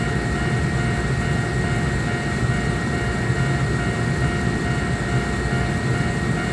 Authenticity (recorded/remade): recorded